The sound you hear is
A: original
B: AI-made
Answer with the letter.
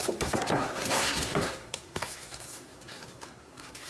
B